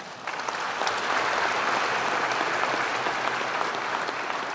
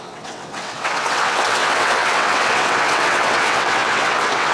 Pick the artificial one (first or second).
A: second